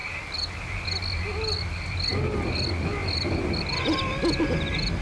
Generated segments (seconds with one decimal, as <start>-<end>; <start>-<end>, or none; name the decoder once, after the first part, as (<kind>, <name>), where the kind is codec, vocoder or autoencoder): none